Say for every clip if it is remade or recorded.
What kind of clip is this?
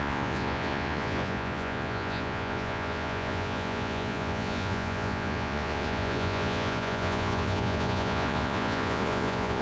remade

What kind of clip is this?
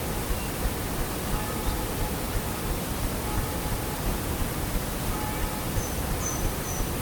recorded